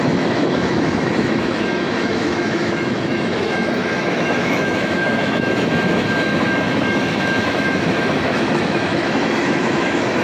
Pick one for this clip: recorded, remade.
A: remade